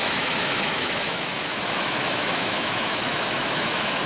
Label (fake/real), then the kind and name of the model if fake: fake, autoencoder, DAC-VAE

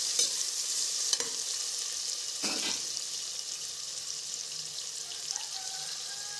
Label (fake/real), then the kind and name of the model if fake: real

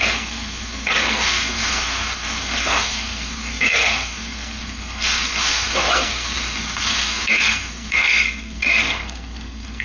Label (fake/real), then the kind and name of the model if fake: fake, codec, SNAC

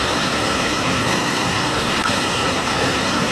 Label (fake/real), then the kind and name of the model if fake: fake, codec, SNAC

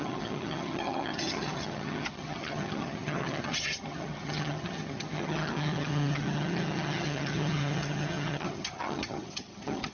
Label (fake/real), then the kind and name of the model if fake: fake, vocoder, HiFi-GAN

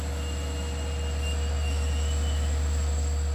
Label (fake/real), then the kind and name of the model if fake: real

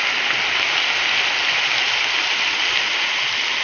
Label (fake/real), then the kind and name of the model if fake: real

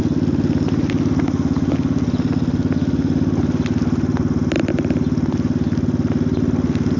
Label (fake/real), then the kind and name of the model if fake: real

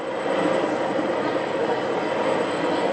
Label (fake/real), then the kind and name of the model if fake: real